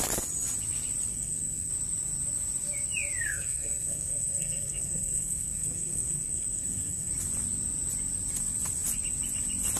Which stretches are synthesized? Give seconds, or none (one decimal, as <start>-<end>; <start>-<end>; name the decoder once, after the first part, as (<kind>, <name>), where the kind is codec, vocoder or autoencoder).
1.1-1.7 (codec, SNAC); 3.3-7.1